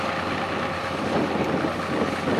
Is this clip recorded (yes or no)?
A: yes